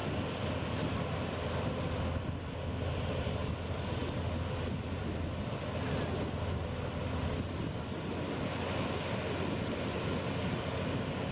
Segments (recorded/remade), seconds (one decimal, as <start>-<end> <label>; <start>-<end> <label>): 0.0-11.3 recorded